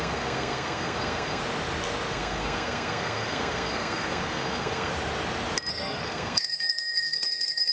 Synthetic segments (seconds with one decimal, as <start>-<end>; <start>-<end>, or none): 0.0-1.4; 2.1-4.9; 5.7-7.7